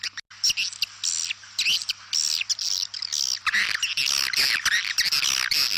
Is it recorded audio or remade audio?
recorded